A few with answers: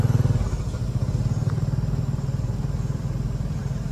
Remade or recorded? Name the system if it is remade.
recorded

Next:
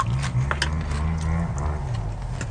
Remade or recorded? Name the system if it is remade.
recorded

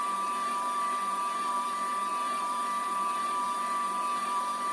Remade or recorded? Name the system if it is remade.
remade, vocoder, BigVGAN v2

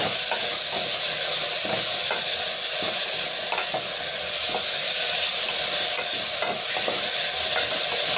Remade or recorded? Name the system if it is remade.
recorded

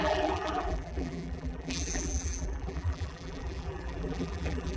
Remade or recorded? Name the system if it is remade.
remade, vocoder, BigVGAN v2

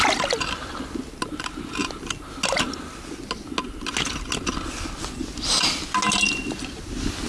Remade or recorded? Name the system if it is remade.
recorded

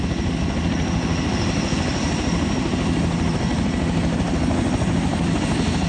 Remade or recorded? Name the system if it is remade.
recorded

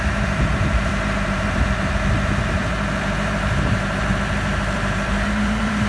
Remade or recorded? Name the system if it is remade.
remade, vocoder, BigVGAN v2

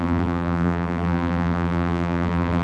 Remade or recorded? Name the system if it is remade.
remade, vocoder, BigVGAN v2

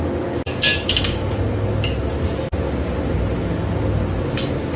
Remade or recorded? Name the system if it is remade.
recorded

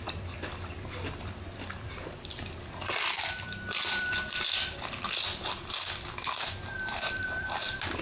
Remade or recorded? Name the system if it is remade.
remade, vocoder, BigVGAN v2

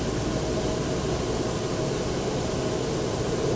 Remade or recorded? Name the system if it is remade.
recorded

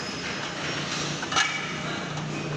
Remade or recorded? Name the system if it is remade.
recorded